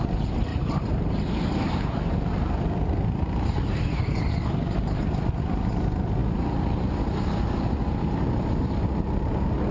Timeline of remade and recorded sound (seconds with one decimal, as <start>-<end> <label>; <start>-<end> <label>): 0.0-0.5 recorded; 0.5-4.2 remade; 4.2-6.2 recorded; 6.2-7.8 remade; 7.8-9.7 recorded